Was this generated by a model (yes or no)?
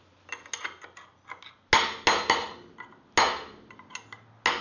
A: no